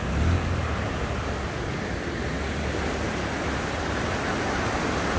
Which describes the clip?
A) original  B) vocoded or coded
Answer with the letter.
A